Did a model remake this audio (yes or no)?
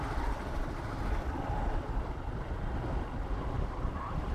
yes